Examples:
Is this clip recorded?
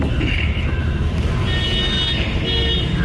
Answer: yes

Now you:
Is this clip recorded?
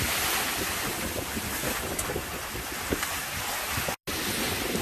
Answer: yes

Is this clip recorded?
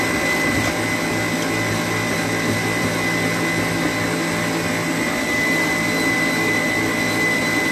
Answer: yes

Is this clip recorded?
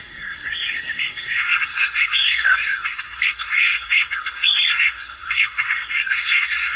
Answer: no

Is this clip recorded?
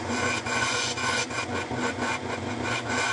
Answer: no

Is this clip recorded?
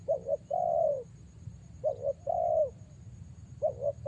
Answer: no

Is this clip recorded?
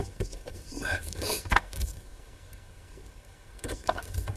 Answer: no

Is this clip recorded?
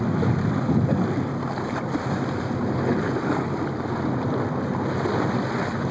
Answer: yes